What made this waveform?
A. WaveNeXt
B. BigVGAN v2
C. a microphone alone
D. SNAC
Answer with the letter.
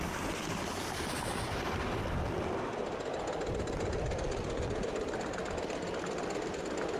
C